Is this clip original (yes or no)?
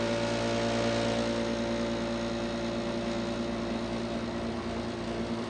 yes